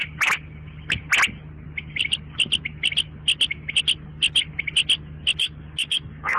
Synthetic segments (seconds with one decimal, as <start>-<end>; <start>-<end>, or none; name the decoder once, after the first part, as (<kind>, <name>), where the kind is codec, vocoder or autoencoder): 5.4-6.4 (codec, DAC)